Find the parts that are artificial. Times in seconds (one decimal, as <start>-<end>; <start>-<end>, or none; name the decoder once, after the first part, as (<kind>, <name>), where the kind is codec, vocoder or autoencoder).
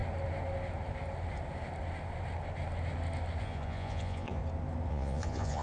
3.4-4.4 (vocoder, Vocos); 4.9-5.6